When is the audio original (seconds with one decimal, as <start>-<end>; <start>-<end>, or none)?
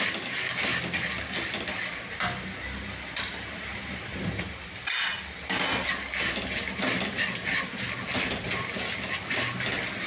0.0-10.1